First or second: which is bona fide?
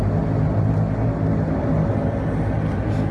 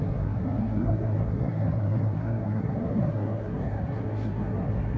first